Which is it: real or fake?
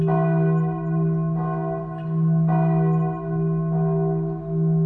real